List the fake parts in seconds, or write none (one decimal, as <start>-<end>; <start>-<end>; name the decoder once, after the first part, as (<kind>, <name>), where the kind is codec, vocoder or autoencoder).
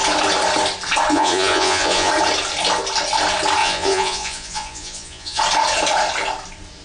1.1-2.1 (vocoder, Vocos); 3.6-5.4